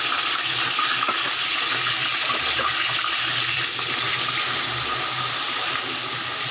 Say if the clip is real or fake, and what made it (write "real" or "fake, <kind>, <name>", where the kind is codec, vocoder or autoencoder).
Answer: real